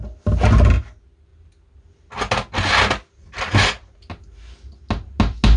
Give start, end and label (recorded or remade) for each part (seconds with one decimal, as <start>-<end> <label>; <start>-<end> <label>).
0.0-5.6 recorded

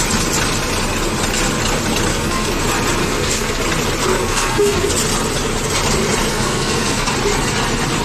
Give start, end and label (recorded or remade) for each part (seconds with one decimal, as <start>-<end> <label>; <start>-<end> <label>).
0.0-2.1 recorded; 2.1-2.6 remade; 2.6-3.0 recorded; 3.0-3.6 remade; 3.6-4.0 recorded; 4.0-4.9 remade; 4.9-6.3 recorded; 6.3-7.1 remade; 7.1-8.0 recorded